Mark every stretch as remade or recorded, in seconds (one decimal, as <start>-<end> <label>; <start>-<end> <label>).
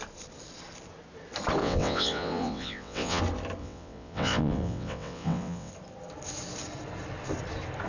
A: 0.0-1.6 recorded; 1.6-3.2 remade; 3.2-3.6 recorded; 3.6-5.7 remade; 5.7-7.9 recorded